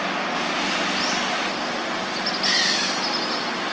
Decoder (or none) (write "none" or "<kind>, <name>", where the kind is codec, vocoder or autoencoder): none